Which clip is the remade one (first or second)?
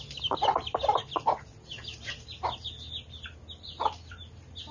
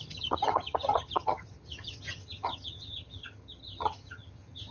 second